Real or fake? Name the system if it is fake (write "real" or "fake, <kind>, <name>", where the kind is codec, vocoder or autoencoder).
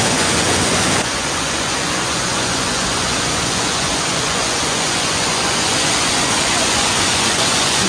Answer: fake, vocoder, Vocos